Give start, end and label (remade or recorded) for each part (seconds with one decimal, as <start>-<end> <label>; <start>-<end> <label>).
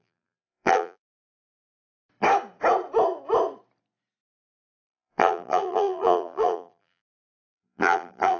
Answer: 0.0-1.8 remade; 1.8-4.5 recorded; 4.5-8.4 remade